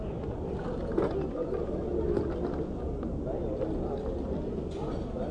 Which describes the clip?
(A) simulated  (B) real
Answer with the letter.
B